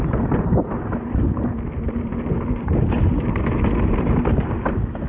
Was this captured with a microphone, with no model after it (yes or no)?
yes